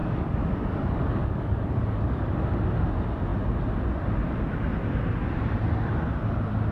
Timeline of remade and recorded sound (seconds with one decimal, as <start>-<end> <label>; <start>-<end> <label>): 0.0-2.5 remade; 2.5-6.7 recorded